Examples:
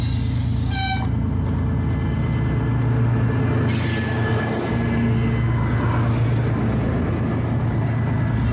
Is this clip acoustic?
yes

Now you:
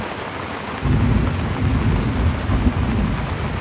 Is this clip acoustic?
yes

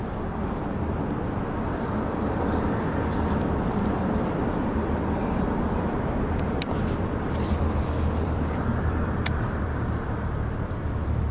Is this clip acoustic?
no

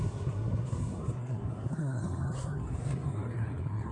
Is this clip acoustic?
no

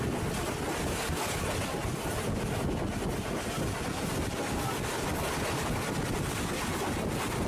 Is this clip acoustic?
yes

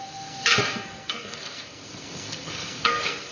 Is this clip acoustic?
no